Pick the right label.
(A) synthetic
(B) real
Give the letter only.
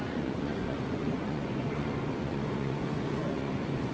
A